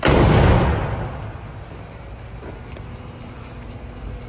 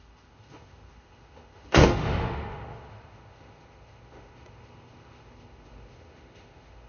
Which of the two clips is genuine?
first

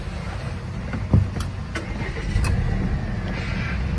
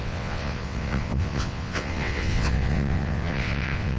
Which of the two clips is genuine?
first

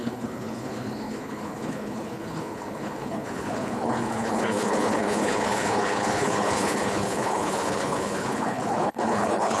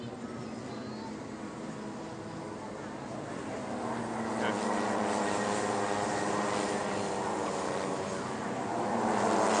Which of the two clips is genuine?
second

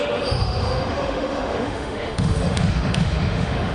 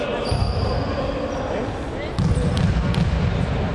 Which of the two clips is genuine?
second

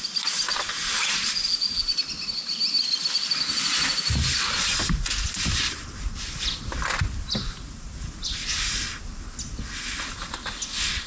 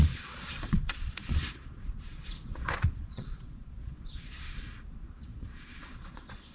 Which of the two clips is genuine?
first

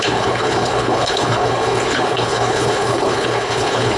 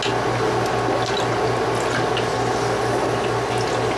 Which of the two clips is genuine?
second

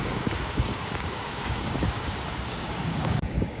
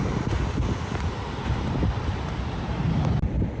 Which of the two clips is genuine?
second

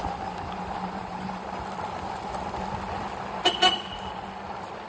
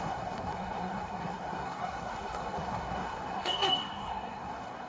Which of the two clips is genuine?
first